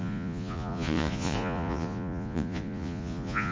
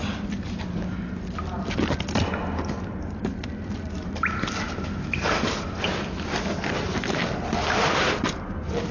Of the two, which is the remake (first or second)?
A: first